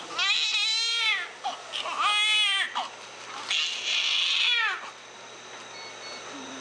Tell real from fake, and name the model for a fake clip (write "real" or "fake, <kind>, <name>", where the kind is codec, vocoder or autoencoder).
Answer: real